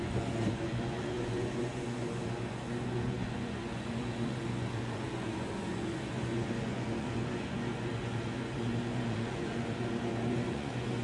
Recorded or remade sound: remade